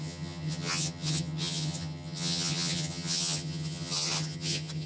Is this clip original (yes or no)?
no